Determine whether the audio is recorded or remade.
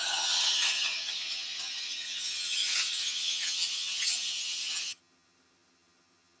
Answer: remade